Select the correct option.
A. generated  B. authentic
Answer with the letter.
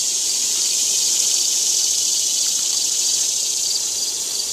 A